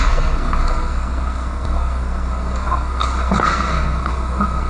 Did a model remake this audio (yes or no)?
yes